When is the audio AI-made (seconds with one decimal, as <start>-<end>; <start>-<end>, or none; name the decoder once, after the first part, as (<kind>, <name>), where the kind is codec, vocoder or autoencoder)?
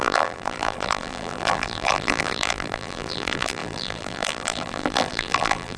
0.0-5.8 (vocoder, BigVGAN v2)